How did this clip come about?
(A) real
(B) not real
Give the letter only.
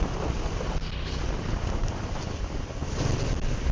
A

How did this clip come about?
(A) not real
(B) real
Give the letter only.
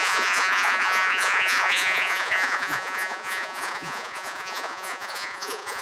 A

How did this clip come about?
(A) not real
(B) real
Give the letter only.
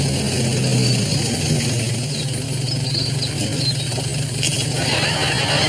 B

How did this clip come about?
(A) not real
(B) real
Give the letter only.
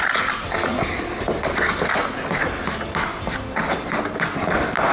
B